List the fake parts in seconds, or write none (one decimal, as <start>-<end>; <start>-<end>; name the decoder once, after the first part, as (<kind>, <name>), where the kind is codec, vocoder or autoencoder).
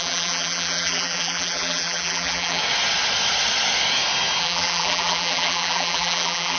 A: 0.0-2.6 (vocoder, BigVGAN v2); 4.4-6.6